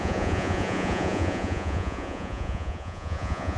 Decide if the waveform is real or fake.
fake